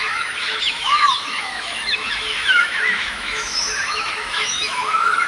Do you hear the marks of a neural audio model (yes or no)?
yes